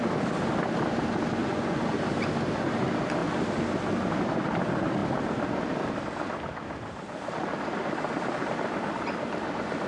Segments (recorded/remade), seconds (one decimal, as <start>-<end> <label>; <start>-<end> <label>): 0.0-1.4 recorded; 1.4-2.0 remade; 2.0-9.9 recorded